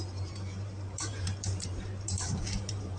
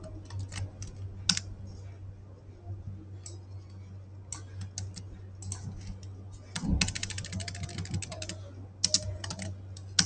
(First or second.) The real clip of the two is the second